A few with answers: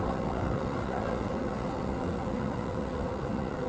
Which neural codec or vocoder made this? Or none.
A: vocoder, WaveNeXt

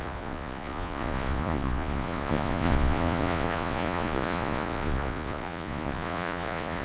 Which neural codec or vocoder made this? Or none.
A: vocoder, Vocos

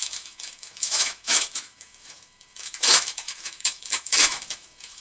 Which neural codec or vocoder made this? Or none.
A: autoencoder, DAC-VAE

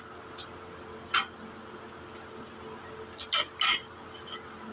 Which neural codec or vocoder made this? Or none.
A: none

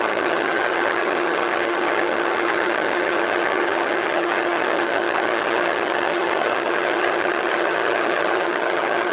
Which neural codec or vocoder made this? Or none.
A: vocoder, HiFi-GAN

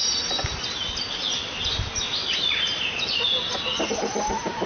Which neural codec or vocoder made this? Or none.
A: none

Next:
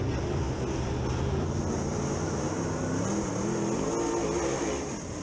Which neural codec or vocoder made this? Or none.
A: none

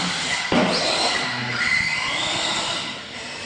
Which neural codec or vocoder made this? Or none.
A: none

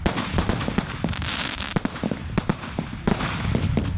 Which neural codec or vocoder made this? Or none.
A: none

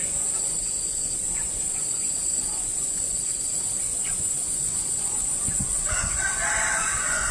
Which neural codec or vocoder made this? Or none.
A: vocoder, Vocos